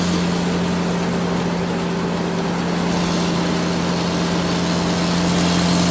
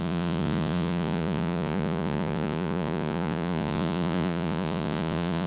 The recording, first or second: first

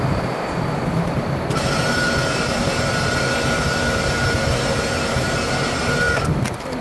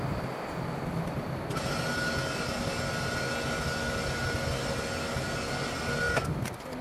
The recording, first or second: second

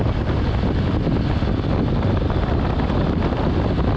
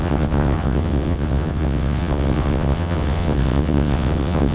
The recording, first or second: first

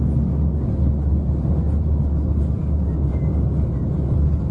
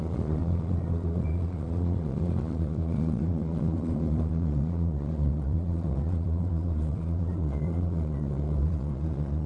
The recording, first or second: first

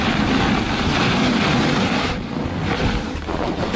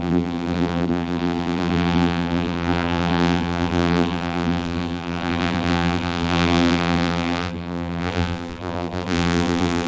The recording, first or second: first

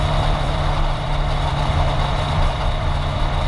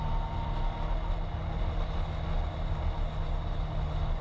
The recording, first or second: second